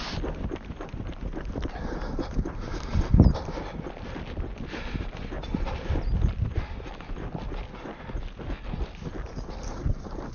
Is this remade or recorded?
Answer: recorded